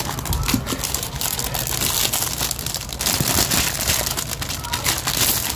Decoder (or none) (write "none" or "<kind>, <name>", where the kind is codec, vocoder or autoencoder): none